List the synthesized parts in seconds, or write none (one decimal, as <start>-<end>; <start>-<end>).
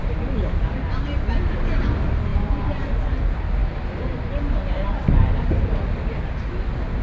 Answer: 0.0-0.8; 2.3-2.9; 3.6-4.2